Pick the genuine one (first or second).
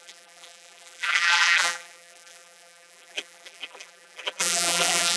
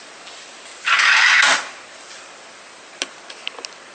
second